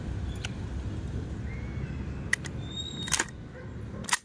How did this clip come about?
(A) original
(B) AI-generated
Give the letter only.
A